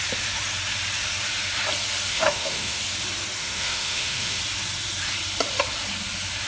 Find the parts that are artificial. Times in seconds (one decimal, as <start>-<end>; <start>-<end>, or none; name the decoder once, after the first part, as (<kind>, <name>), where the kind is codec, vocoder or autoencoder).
2.1-2.8 (autoencoder, DAC-VAE); 3.4-4.4